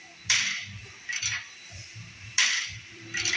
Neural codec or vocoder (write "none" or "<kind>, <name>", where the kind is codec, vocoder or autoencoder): vocoder, BigVGAN v2